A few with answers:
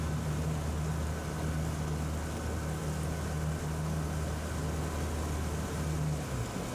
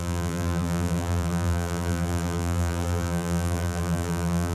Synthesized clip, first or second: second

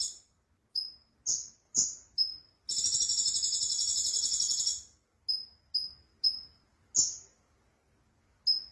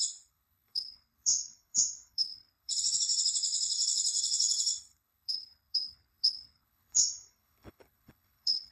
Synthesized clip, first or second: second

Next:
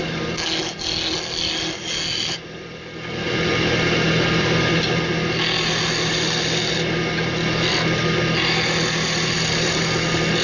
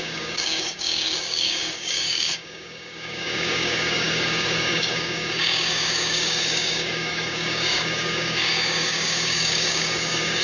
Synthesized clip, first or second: second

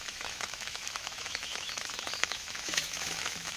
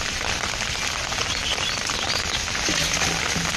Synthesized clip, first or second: first